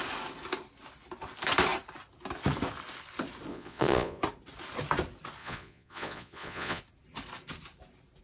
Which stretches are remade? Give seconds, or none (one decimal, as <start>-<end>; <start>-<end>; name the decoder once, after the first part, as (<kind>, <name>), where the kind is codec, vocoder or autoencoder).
3.5-4.2 (vocoder, Vocos); 5.4-6.8